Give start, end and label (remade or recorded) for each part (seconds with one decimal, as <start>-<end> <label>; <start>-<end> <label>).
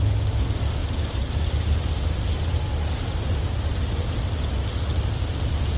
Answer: 0.0-5.8 recorded